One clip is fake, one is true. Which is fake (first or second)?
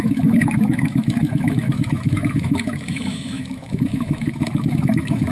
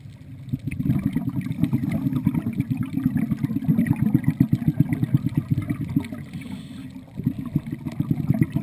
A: first